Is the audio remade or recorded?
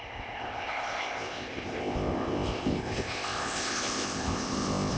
remade